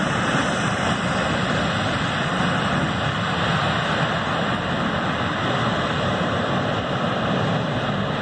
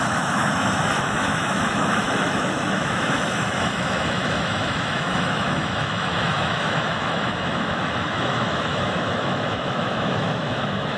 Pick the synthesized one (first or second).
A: second